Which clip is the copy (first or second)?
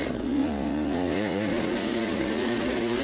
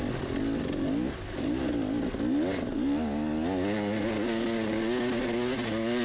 first